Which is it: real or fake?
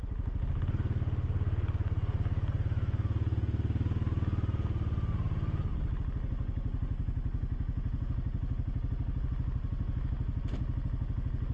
real